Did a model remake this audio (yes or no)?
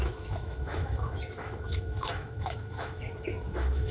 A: yes